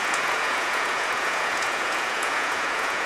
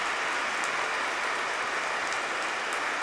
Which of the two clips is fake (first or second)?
first